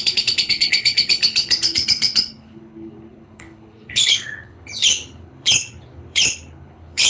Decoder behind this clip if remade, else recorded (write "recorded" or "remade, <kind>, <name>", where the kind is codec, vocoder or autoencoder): remade, codec, HILCodec